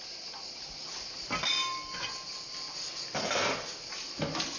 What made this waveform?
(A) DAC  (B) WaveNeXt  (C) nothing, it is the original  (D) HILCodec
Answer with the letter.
C